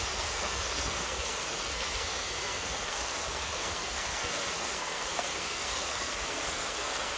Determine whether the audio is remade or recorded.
remade